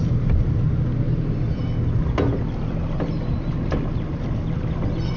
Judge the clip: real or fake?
real